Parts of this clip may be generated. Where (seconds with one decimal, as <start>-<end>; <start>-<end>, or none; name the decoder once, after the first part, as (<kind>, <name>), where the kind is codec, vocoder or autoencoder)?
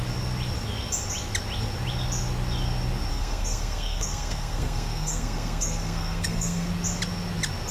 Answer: 3.1-6.7 (codec, SNAC)